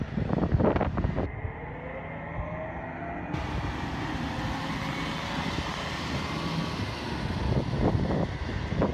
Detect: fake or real real